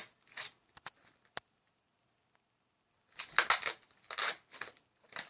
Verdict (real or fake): real